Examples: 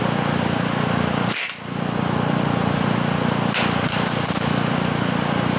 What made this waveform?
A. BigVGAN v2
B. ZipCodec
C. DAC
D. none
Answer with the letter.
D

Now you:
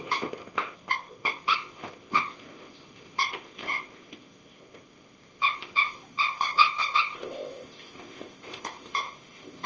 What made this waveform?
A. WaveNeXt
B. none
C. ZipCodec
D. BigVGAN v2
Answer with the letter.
C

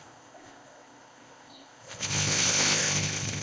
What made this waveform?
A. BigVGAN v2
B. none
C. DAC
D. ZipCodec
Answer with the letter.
D